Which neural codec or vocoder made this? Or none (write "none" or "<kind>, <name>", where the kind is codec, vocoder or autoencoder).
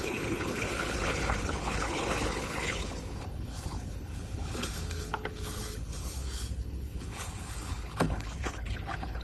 codec, HILCodec